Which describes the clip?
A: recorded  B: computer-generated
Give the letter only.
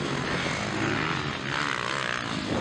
A